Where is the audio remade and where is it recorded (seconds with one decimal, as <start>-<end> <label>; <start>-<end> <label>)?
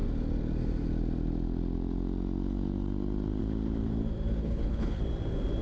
0.0-4.4 recorded; 4.4-5.0 remade; 5.0-5.6 recorded